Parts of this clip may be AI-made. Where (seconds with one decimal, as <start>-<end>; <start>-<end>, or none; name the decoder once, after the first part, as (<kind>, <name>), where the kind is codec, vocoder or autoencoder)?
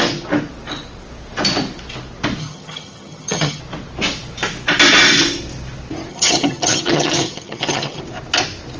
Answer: 2.4-3.6 (vocoder, HiFi-GAN); 6.1-8.0